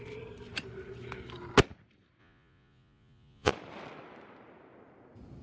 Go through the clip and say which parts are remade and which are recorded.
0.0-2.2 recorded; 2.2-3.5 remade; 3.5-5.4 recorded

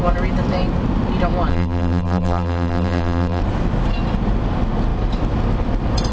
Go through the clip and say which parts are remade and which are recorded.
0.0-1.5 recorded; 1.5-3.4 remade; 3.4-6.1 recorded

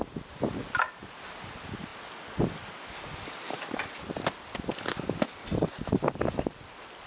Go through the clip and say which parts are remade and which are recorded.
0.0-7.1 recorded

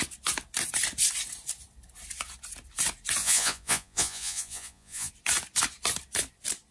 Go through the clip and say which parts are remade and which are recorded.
0.0-3.2 recorded; 3.2-5.1 remade; 5.1-6.7 recorded